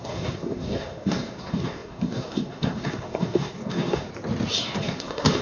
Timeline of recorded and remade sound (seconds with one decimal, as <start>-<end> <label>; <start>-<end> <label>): 0.0-4.1 remade; 4.1-4.6 recorded; 4.6-5.4 remade